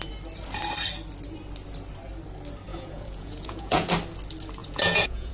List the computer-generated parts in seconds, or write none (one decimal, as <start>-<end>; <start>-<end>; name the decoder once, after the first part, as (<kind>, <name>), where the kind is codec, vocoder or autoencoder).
2.7-3.9 (vocoder, Vocos); 4.6-5.3

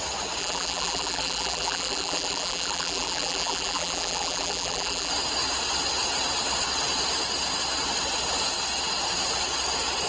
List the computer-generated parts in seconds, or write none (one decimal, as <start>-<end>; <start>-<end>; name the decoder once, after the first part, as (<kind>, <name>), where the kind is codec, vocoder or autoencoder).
0.4-5.1 (vocoder, BigVGAN v2)

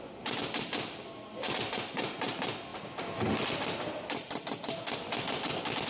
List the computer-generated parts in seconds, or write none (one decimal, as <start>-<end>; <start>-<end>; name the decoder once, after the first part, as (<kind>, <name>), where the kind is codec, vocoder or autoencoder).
none

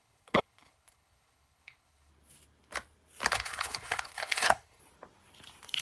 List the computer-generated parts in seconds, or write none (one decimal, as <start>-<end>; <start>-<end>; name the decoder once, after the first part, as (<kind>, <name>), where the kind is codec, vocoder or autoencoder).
0.0-2.1 (codec, HILCodec); 3.3-4.8

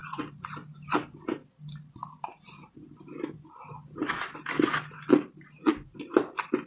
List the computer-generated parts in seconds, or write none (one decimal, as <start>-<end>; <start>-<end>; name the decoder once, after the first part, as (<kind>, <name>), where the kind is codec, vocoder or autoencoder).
none